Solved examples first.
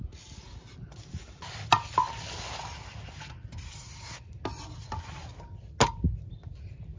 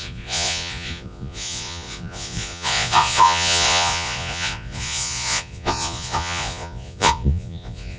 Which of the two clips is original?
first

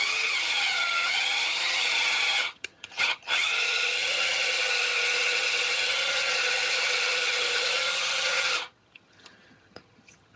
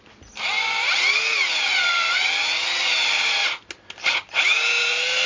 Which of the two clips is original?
second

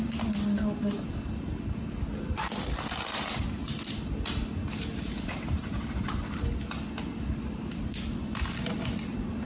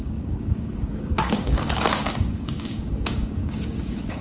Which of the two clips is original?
first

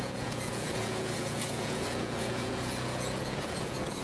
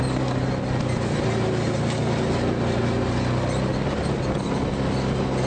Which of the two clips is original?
second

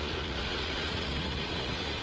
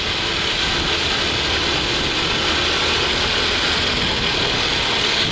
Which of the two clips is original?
second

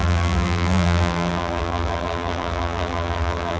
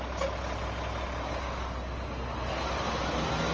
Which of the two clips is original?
second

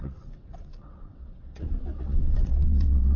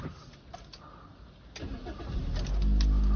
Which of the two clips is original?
second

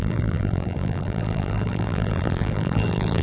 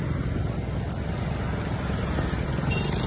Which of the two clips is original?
second